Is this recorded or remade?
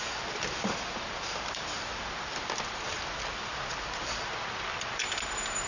remade